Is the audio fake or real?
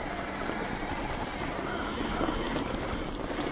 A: real